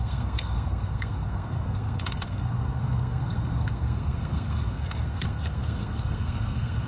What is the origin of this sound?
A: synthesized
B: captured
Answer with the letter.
A